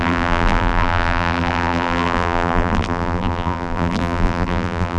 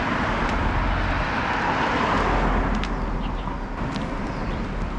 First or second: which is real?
second